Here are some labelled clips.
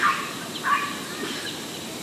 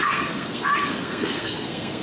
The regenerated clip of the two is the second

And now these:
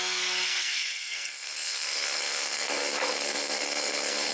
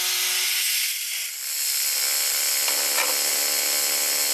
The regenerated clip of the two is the first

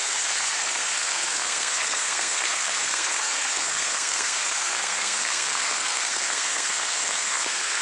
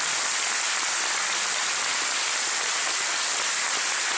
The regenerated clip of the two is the first